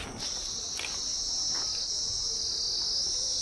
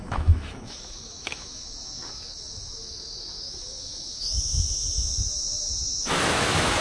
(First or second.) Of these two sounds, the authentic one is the first